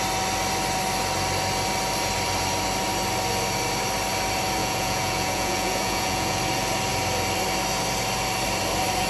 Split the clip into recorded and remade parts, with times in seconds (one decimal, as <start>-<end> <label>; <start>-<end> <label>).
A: 0.0-4.6 recorded; 4.6-6.4 remade; 6.4-9.1 recorded